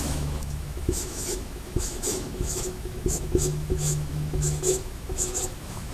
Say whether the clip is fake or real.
fake